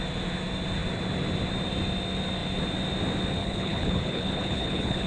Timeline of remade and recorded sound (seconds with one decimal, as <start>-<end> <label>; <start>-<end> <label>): 0.0-3.4 recorded; 3.4-5.1 remade